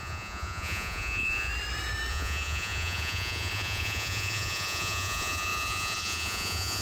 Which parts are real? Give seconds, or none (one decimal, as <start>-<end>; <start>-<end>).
1.5-2.1